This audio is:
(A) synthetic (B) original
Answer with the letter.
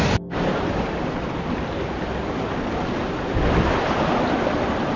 B